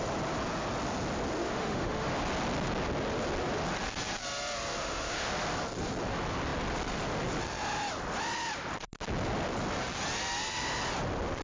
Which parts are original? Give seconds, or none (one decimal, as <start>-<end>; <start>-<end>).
0.0-1.4; 2.1-4.8; 5.3-11.4